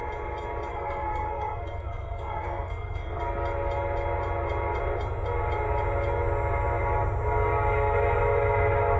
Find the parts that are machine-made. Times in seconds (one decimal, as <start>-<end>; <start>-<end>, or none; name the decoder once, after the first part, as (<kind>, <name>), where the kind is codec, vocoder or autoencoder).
0.7-3.2 (codec, SNAC)